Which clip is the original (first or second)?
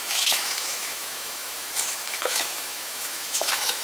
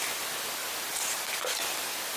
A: second